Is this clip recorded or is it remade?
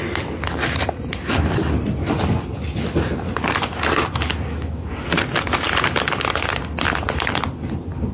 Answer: recorded